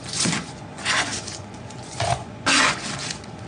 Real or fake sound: fake